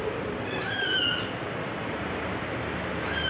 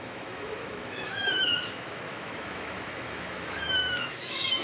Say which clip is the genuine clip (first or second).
first